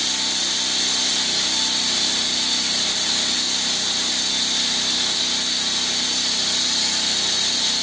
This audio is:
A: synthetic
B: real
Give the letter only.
B